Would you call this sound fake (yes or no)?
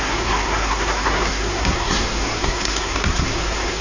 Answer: yes